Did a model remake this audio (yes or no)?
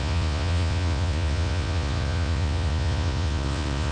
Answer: yes